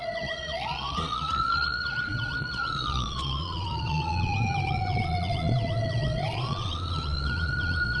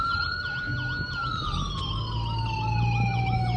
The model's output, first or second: first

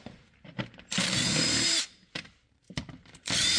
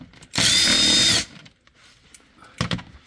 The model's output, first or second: first